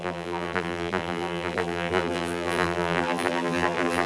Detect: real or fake fake